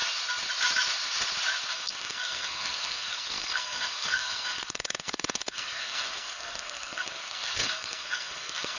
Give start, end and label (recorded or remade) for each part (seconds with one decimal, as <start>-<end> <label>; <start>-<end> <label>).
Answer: 0.0-1.7 recorded; 1.7-8.8 remade